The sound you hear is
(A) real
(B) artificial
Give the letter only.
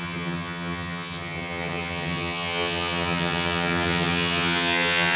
B